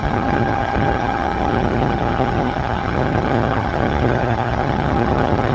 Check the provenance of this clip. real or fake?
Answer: fake